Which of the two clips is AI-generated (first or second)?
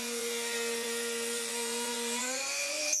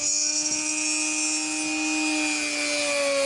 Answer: first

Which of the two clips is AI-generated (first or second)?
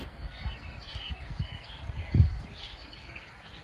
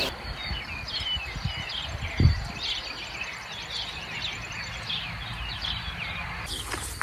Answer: first